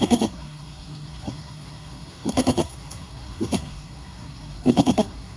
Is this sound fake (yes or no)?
yes